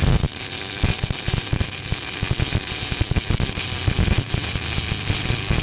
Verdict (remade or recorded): recorded